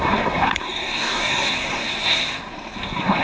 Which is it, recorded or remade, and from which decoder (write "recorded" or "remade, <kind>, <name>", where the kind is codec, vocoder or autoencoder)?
remade, codec, SNAC